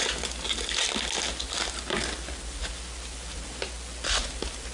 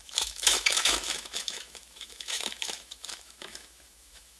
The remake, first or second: second